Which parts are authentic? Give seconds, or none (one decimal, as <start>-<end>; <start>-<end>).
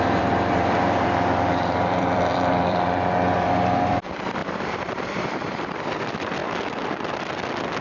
4.4-4.9; 6.4-7.8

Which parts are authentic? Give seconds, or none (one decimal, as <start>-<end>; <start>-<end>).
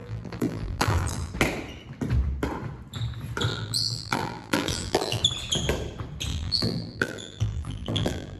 1.3-3.5; 5.2-6.3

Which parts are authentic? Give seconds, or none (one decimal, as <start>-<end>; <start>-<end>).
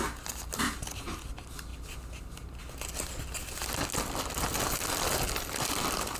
0.0-6.2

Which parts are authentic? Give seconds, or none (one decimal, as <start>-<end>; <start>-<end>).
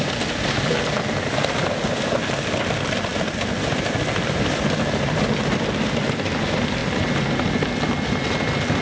0.0-8.8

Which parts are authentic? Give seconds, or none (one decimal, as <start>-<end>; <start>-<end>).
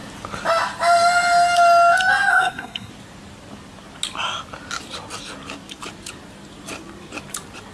0.0-2.3; 2.9-7.7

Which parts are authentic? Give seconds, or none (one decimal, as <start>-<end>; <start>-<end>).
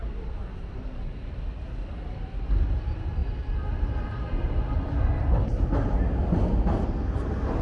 0.0-7.6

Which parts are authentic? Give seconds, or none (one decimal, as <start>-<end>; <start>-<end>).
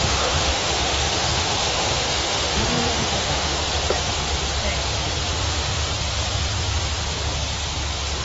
3.6-5.3; 5.8-8.2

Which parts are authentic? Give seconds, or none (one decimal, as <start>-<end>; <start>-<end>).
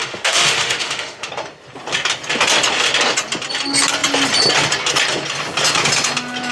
1.3-6.5